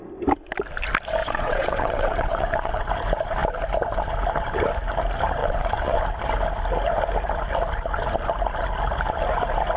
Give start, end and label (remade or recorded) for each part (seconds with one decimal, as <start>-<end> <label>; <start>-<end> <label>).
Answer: 0.0-1.2 recorded; 1.2-2.9 remade; 2.9-5.4 recorded; 5.4-6.0 remade; 6.0-9.8 recorded